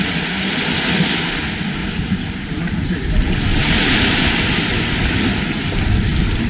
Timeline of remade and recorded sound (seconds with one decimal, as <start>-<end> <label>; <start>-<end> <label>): 0.0-1.8 recorded; 1.8-3.1 remade; 3.1-3.6 recorded; 3.6-4.6 remade; 4.6-6.5 recorded